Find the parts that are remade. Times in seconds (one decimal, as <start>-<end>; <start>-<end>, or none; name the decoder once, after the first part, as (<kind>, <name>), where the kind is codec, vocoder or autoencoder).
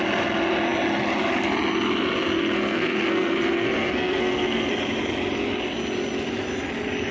2.4-4.7 (codec, SNAC)